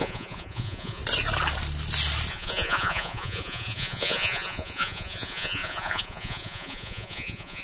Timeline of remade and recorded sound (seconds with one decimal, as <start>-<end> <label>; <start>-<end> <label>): 0.0-1.0 remade; 1.0-2.3 recorded; 2.3-7.6 remade